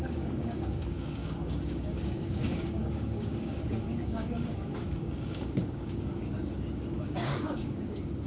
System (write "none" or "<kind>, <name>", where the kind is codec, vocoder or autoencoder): codec, DAC